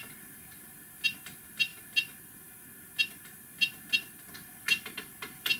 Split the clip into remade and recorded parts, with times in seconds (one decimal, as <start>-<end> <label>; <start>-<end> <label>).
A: 0.0-5.6 recorded